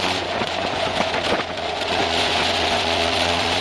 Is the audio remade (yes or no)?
yes